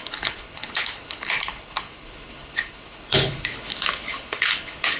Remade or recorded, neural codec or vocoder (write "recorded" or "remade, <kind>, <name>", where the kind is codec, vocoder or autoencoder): remade, codec, HILCodec